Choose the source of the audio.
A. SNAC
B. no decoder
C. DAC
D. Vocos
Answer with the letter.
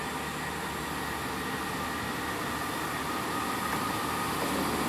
B